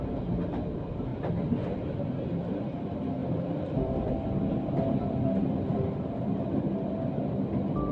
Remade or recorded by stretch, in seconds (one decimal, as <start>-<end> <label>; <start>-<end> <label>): 0.0-1.1 recorded; 1.1-2.6 remade; 2.6-3.2 recorded; 3.2-5.2 remade; 5.2-5.7 recorded; 5.7-6.7 remade; 6.7-7.9 recorded